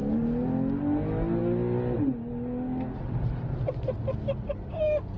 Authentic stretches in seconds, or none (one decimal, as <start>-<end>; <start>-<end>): 0.0-5.2